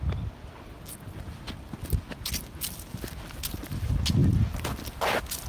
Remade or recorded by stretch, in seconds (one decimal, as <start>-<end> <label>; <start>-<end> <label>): 0.0-5.5 recorded

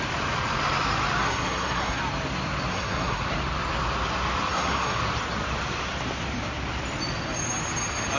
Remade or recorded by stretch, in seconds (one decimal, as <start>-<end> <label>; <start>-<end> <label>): 0.0-1.2 recorded; 1.2-2.0 remade; 2.0-2.7 recorded; 2.7-3.2 remade; 3.2-4.5 recorded; 4.5-5.0 remade; 5.0-8.2 recorded